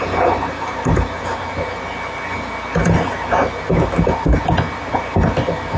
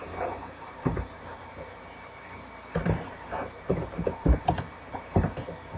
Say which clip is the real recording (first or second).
first